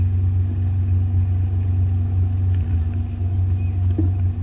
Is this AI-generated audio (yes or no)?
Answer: no